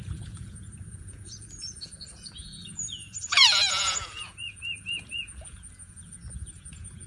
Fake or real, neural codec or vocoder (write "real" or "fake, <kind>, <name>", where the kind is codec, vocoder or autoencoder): fake, vocoder, Vocos